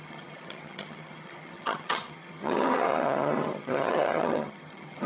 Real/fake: fake